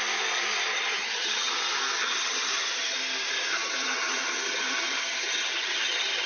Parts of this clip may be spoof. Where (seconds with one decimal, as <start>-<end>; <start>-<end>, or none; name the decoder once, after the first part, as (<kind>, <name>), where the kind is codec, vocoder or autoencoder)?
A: 0.7-1.5 (vocoder, HiFi-GAN); 2.0-2.9; 3.5-6.3